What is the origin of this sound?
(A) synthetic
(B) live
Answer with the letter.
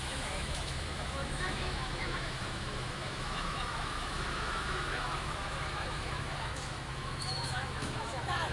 A